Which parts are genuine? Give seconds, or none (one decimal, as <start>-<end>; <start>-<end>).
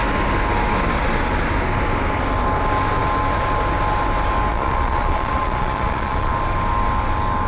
0.0-4.5; 6.3-7.5